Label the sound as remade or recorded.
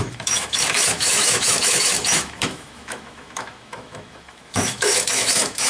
remade